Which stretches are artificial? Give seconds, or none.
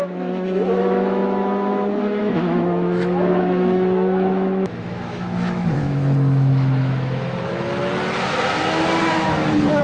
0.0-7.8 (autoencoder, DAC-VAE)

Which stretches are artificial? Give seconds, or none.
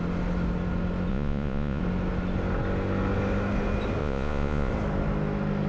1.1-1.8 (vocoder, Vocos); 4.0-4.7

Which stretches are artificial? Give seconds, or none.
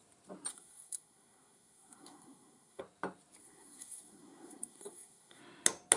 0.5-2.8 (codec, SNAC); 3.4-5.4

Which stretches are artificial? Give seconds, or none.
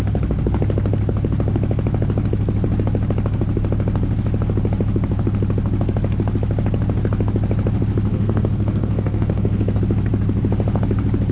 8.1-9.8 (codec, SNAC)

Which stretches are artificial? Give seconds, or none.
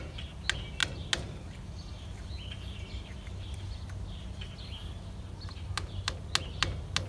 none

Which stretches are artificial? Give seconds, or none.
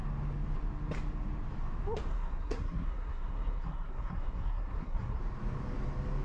2.1-5.2 (codec, SNAC)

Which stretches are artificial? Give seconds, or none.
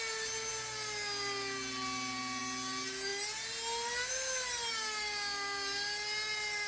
none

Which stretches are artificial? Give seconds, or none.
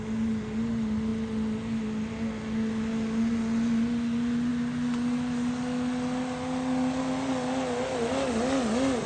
none